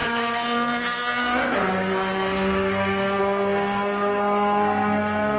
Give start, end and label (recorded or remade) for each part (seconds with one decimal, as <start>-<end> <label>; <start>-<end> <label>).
0.0-5.4 remade